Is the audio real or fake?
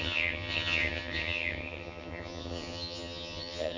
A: fake